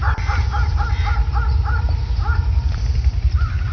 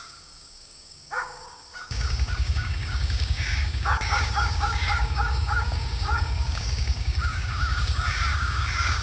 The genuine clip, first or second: first